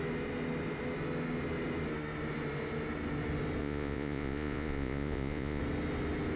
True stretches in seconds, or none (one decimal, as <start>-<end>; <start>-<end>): 0.0-3.6; 5.6-6.4